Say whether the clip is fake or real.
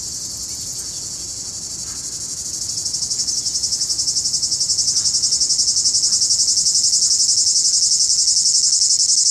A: real